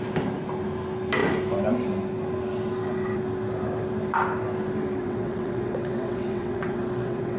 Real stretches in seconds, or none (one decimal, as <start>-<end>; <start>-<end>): 0.0-5.0